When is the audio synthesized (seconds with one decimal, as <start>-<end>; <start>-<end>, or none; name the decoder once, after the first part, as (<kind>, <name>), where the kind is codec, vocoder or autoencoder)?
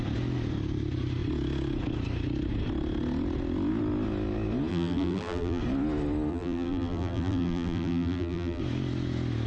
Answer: 4.7-5.6 (vocoder, BigVGAN v2); 6.3-8.6